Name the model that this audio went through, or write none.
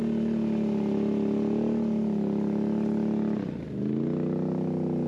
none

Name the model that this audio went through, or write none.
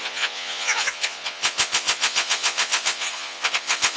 vocoder, Vocos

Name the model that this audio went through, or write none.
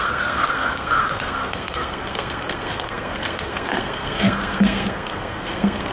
codec, SNAC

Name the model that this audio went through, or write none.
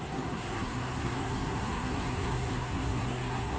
codec, SNAC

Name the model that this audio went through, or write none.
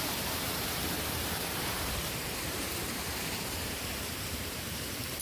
vocoder, BigVGAN v2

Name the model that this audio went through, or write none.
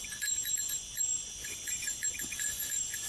vocoder, Vocos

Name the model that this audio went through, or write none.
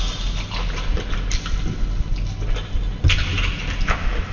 vocoder, BigVGAN v2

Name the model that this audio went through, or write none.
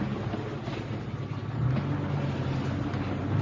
none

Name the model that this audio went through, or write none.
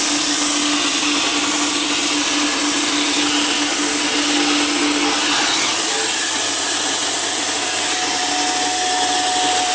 none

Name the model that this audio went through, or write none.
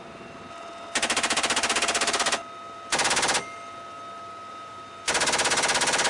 none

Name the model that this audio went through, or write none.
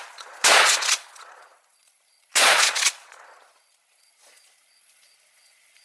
vocoder, Vocos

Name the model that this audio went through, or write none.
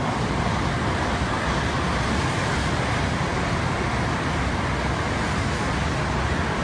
none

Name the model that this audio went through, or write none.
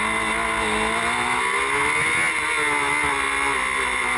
none